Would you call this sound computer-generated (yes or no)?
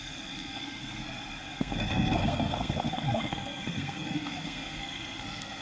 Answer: yes